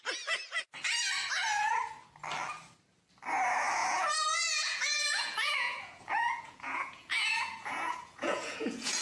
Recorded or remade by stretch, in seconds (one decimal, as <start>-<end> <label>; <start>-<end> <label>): 0.0-3.8 recorded; 3.8-9.0 remade